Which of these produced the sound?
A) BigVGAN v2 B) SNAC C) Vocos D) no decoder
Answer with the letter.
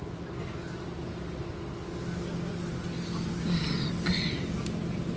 D